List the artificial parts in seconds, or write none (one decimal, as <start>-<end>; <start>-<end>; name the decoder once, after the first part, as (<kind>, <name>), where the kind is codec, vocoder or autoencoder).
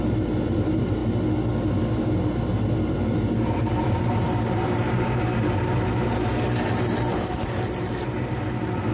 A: 0.0-1.0 (vocoder, BigVGAN v2); 1.6-8.9